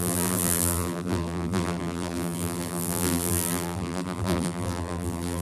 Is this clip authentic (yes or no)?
no